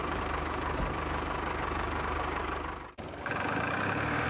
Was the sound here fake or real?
fake